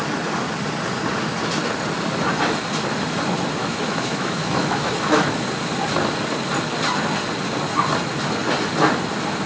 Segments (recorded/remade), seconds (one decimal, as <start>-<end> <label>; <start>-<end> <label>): 0.0-3.6 recorded; 3.6-5.3 remade; 5.3-9.5 recorded